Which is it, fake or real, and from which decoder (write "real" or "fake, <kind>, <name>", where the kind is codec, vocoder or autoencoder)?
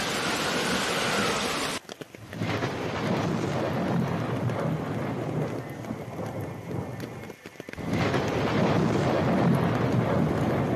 real